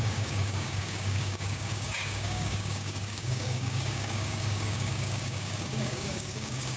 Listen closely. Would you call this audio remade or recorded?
remade